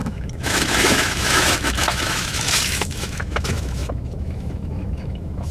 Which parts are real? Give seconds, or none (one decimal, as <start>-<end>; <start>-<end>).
none